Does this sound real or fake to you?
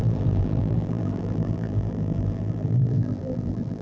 fake